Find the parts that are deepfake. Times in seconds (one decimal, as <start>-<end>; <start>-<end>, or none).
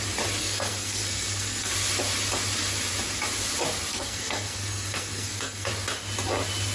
0.4-1.7; 3.9-5.7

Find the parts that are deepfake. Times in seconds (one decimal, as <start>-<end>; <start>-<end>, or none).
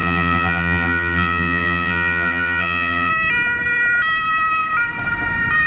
0.0-3.1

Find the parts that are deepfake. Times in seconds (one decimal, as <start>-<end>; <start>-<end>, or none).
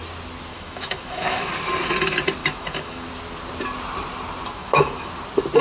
0.5-1.5; 2.4-3.1; 4.6-5.1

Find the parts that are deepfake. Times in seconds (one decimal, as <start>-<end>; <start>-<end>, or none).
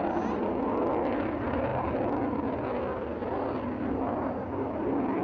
1.7-2.7; 3.2-4.6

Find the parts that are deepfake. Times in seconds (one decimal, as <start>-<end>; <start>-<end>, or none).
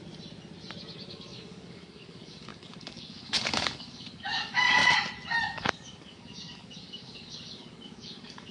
1.1-4.8; 5.4-8.5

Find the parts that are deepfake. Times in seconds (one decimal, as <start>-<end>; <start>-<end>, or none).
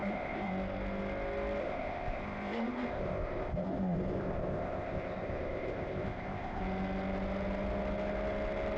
0.0-0.5; 1.6-6.6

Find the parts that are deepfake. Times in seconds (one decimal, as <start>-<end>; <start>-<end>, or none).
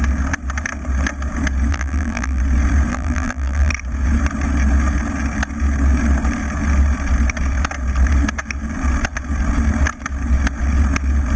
1.7-2.4; 2.9-3.7